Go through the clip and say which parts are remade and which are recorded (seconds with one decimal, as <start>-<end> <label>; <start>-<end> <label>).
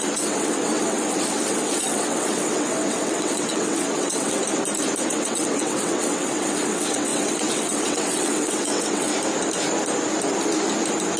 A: 0.0-4.4 remade; 4.4-5.1 recorded; 5.1-9.1 remade; 9.1-11.2 recorded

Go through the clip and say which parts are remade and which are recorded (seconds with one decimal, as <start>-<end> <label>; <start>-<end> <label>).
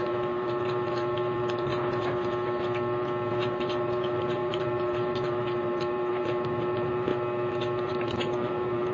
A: 0.0-1.7 remade; 1.7-3.4 recorded; 3.4-7.1 remade; 7.1-7.9 recorded; 7.9-8.9 remade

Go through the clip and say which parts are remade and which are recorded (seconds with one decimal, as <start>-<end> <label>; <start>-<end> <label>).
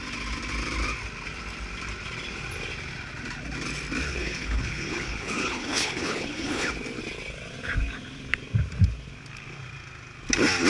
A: 0.0-4.1 recorded; 4.1-6.7 remade; 6.7-10.7 recorded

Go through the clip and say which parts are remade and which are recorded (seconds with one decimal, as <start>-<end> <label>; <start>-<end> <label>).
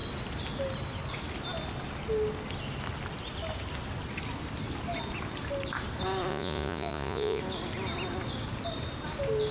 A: 0.0-6.3 recorded; 6.3-7.4 remade; 7.4-9.5 recorded